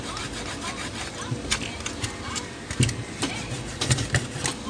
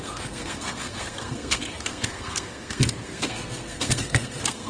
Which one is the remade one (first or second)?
second